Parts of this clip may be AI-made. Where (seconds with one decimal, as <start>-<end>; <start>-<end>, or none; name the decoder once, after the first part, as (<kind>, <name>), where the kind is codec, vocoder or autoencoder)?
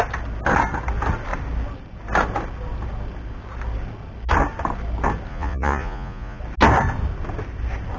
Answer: 5.3-6.4 (vocoder, Vocos)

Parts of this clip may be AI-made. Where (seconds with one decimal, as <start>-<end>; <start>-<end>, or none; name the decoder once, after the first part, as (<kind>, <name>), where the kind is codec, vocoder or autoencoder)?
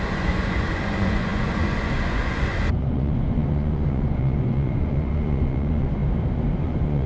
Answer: 0.0-6.0 (vocoder, Vocos); 6.6-7.1